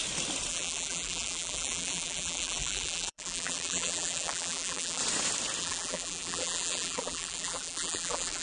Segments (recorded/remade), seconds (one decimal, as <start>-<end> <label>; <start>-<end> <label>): 0.0-0.5 recorded; 0.5-5.0 remade; 5.0-5.6 recorded; 5.6-8.4 remade